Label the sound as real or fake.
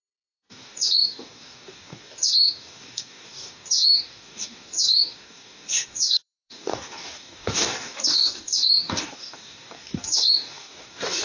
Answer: fake